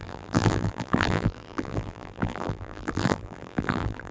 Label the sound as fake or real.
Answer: fake